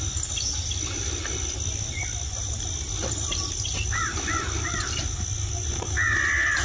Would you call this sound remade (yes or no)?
no